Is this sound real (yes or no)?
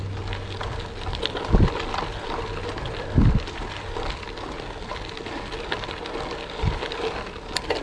yes